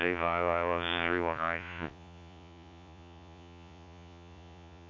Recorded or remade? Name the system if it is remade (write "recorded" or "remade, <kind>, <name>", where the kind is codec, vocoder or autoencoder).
remade, vocoder, Vocos